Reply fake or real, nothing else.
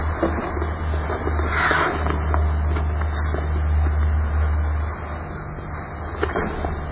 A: real